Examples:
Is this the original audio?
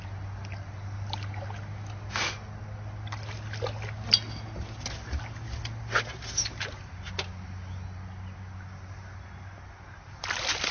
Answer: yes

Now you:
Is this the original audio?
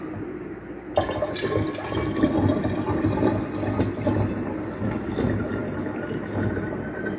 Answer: yes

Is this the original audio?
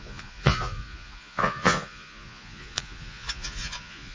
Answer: no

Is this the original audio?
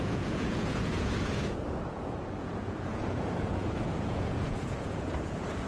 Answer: no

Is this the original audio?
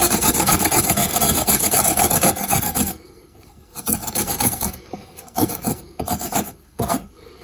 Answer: no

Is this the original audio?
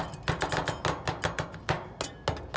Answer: yes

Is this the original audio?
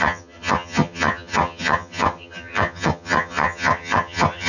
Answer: no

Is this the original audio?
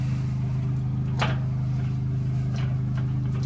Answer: yes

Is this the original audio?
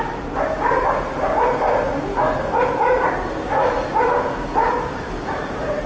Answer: yes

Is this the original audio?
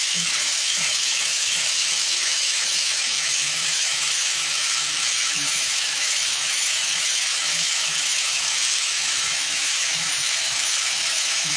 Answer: no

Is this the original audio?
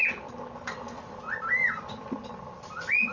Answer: yes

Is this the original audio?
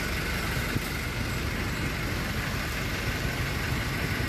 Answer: yes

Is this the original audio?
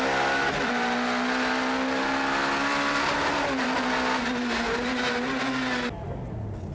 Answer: yes